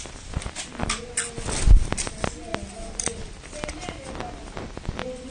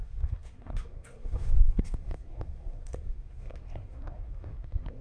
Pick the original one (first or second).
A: first